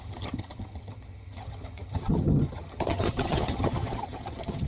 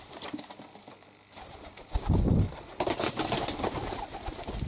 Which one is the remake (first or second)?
first